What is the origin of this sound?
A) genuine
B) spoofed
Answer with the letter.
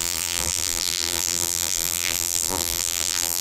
B